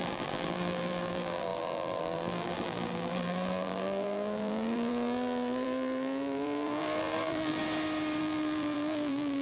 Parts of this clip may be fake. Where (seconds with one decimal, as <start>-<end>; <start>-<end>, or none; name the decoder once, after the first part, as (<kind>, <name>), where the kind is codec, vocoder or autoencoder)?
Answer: 0.0-7.6 (vocoder, BigVGAN v2); 8.2-9.4